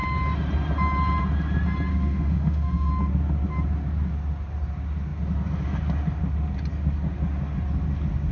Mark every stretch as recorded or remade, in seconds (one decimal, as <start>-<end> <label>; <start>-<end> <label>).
0.0-1.9 recorded; 1.9-2.9 remade; 2.9-8.3 recorded